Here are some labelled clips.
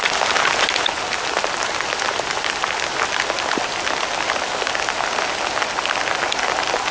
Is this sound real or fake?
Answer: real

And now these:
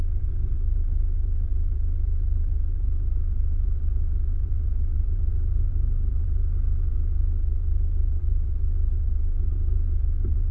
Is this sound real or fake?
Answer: fake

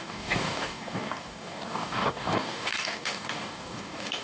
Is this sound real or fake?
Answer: fake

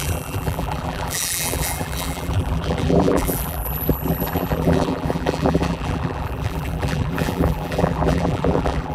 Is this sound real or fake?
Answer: fake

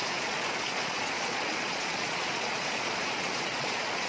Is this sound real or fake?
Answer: fake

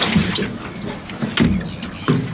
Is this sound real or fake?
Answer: real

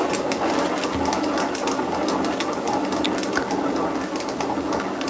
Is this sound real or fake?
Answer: real